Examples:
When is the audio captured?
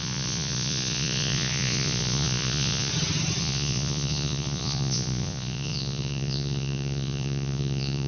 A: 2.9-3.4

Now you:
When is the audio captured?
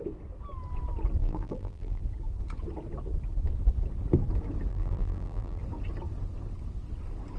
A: 0.0-1.2; 2.0-4.7; 5.6-7.4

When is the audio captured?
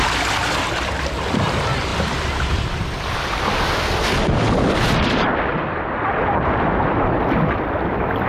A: 0.0-8.3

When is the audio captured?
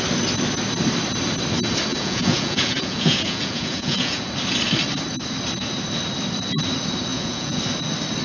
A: 0.0-1.9; 4.3-7.1; 7.6-8.2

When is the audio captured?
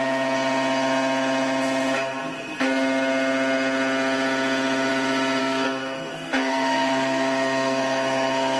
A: 0.0-5.4